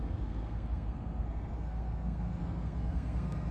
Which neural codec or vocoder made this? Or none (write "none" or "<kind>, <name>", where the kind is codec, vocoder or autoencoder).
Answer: codec, SNAC